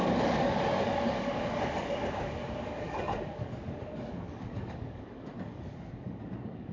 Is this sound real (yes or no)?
no